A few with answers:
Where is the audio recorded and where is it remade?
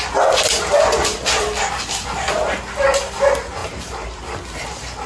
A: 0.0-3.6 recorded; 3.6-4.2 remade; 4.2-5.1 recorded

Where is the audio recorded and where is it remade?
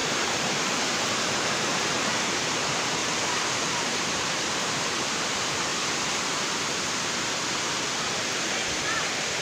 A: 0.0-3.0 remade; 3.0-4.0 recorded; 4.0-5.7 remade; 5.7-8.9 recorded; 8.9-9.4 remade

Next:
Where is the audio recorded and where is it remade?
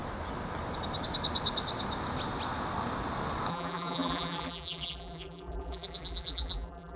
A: 0.0-3.5 recorded; 3.5-7.0 remade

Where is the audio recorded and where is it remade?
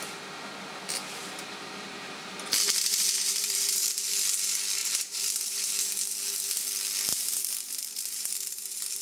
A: 0.0-1.2 recorded; 1.2-4.1 remade; 4.1-4.8 recorded; 4.8-5.7 remade; 5.7-7.1 recorded; 7.1-9.0 remade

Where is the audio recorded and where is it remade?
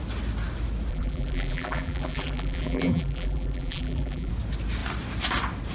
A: 0.0-0.9 recorded; 0.9-4.3 remade; 4.3-5.7 recorded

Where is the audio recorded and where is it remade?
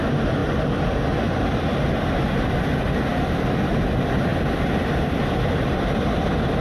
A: 0.0-0.4 recorded; 0.4-2.6 remade; 2.6-4.3 recorded; 4.3-5.8 remade; 5.8-6.6 recorded